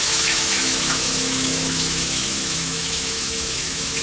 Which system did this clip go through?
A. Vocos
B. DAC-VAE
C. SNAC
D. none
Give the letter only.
B